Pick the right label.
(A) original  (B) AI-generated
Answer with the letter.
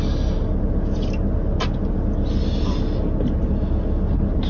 A